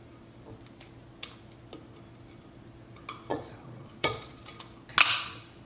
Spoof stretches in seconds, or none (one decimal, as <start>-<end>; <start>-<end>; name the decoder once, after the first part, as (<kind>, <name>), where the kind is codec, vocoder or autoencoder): 3.3-4.4 (vocoder, Vocos)